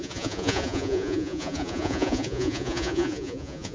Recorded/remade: remade